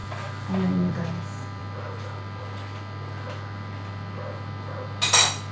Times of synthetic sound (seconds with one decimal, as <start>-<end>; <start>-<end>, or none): none